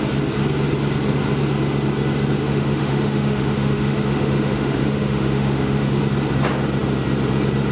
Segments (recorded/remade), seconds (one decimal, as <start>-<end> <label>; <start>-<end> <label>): 0.0-2.4 recorded; 2.4-6.0 remade; 6.0-7.7 recorded